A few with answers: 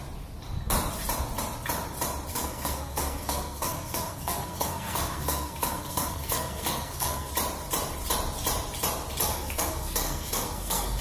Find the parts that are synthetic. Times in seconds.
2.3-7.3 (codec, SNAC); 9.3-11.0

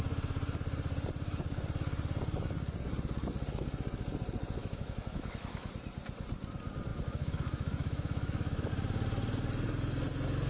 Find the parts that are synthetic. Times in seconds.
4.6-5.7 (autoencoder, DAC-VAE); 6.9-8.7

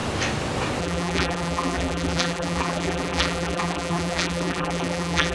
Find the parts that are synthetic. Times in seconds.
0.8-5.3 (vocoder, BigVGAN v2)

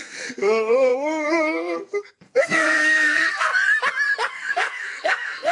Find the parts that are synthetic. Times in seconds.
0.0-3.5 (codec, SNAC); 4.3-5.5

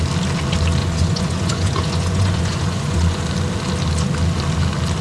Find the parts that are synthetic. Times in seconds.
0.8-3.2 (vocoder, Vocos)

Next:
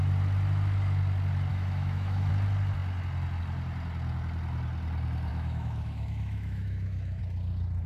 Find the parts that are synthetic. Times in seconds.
1.5-2.3 (autoencoder, DAC-VAE); 5.3-7.2